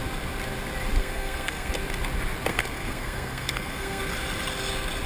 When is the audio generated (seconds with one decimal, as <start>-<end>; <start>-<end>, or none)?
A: 1.0-1.7; 2.5-4.0